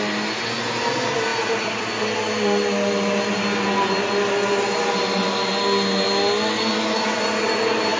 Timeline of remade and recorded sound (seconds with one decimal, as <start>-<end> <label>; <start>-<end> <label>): 0.0-8.0 recorded